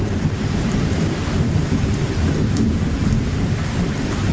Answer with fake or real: fake